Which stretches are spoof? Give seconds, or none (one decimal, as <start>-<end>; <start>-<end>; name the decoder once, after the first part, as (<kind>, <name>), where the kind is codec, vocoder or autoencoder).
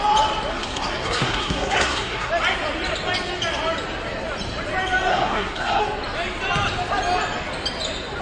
0.5-2.3 (codec, SNAC); 5.1-5.8